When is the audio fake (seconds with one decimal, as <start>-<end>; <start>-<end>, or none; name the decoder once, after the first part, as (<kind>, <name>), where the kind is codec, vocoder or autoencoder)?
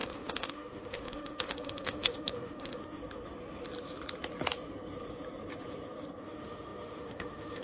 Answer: 0.0-3.0 (autoencoder, DAC-VAE); 6.2-7.6